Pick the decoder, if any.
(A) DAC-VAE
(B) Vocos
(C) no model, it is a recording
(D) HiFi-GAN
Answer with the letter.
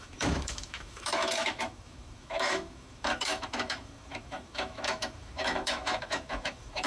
A